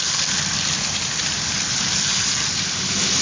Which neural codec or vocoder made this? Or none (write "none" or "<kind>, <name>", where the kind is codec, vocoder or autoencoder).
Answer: none